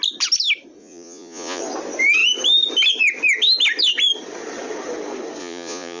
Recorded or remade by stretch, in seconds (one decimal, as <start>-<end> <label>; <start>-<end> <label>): 0.0-0.8 recorded; 0.8-1.6 remade; 1.6-5.4 recorded; 5.4-6.0 remade